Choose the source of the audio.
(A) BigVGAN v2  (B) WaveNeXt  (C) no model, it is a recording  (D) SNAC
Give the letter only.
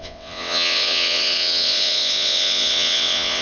B